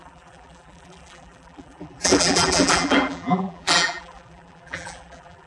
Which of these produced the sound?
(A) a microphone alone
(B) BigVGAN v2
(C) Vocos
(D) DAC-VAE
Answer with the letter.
B